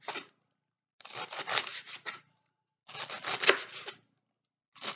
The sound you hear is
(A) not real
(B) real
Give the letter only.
B